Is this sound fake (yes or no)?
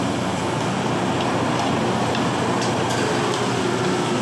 no